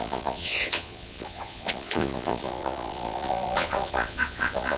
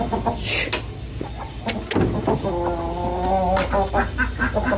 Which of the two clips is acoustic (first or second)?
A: second